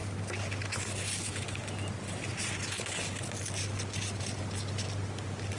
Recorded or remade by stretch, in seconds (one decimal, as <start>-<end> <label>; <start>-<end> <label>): 0.0-5.6 recorded